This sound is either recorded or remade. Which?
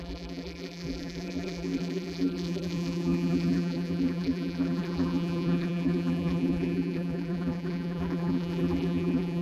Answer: remade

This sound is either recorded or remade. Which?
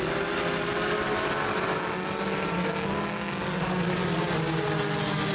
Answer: recorded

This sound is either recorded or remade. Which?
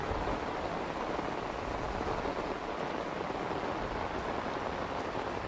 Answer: recorded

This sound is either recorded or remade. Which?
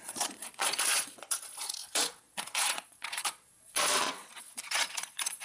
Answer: remade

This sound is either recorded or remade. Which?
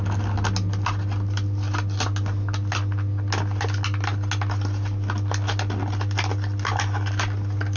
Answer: recorded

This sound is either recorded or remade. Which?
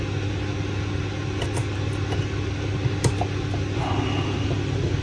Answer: recorded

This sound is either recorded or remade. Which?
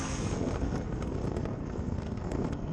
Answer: remade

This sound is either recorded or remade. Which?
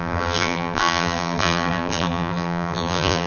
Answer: remade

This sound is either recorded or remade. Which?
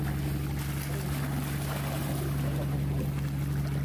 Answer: recorded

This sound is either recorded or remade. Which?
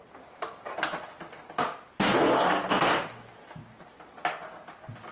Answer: recorded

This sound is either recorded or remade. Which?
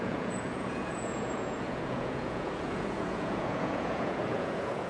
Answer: remade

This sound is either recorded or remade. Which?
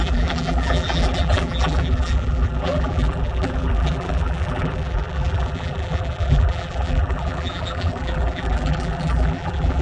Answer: remade